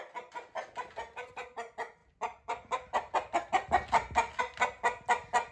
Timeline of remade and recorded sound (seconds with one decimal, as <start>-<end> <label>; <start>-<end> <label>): 0.0-5.5 recorded